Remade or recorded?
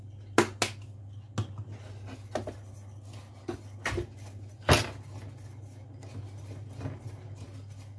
recorded